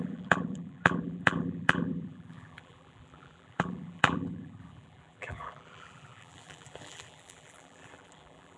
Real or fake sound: fake